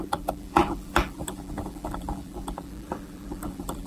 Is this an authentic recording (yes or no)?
no